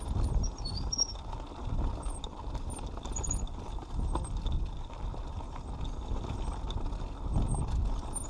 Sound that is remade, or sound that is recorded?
recorded